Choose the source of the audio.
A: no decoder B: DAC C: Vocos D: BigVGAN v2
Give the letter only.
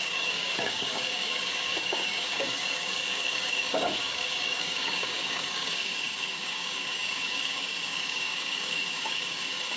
B